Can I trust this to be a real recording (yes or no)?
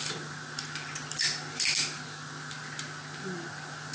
yes